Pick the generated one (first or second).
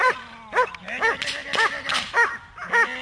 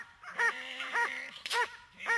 second